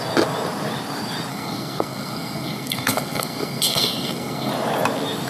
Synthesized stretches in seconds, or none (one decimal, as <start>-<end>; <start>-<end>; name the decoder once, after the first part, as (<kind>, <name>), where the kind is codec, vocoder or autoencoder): 1.3-4.5 (codec, SNAC)